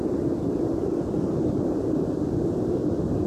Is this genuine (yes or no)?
yes